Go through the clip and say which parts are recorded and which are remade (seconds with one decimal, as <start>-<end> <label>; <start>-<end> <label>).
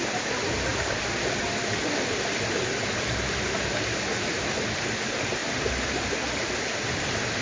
0.0-0.7 recorded; 0.7-1.4 remade; 1.4-5.4 recorded; 5.4-7.4 remade